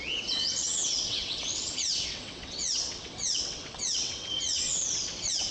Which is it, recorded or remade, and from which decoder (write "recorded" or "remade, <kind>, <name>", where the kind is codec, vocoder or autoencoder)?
remade, vocoder, WaveNeXt